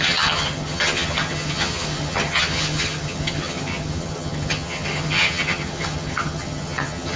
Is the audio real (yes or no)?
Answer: no